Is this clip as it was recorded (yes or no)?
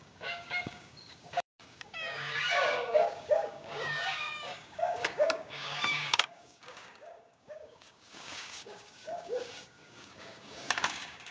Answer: no